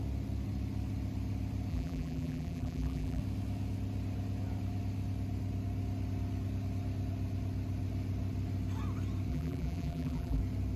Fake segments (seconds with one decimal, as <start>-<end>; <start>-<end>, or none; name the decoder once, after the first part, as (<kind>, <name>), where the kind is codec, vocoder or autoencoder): 1.7-3.2 (vocoder, BigVGAN v2); 9.3-10.4